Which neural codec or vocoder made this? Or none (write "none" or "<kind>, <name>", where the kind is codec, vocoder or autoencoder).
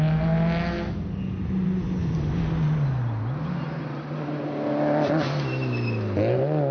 none